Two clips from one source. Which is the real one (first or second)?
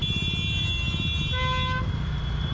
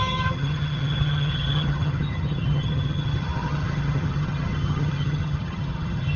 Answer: first